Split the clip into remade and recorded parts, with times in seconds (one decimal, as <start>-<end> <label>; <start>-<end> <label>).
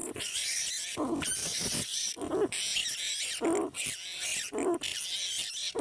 0.0-0.7 remade; 0.7-1.4 recorded; 1.4-2.1 remade; 2.1-5.8 recorded